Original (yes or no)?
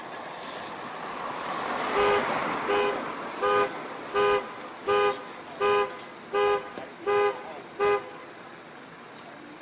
yes